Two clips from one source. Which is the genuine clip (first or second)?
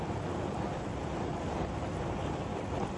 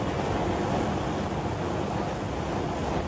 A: second